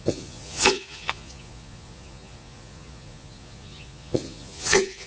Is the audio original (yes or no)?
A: no